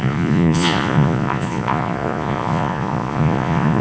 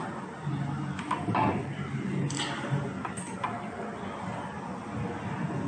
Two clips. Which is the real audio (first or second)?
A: second